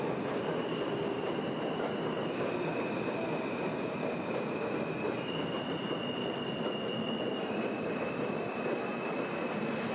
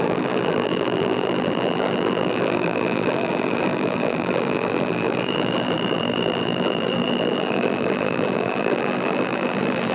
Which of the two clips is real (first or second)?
first